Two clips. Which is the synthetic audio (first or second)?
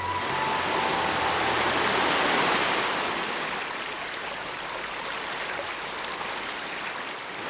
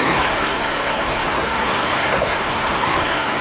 second